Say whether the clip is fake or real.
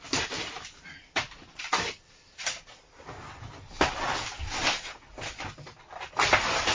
real